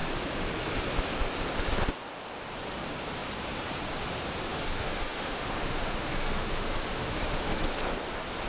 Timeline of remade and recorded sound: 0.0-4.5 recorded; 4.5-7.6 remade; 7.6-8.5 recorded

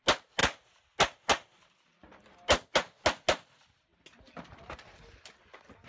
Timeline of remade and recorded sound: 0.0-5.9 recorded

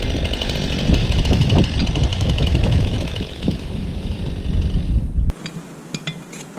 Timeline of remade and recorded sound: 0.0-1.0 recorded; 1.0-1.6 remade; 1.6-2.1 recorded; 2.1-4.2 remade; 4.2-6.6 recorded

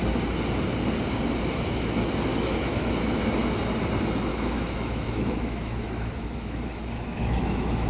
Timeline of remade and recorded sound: 0.0-2.3 recorded; 2.3-3.2 remade; 3.2-4.3 recorded; 4.3-7.9 remade